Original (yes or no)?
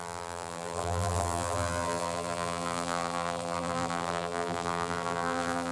no